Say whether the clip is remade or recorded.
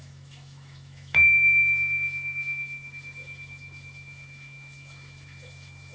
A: remade